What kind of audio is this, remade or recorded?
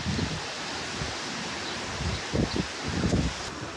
recorded